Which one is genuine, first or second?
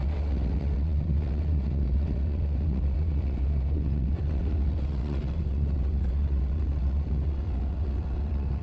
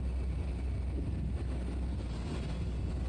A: second